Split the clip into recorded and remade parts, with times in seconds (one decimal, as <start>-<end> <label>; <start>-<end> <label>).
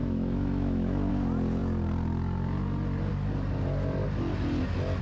0.0-1.1 remade; 1.1-5.0 recorded